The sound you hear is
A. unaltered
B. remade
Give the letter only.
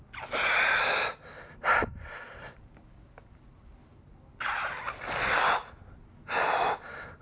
A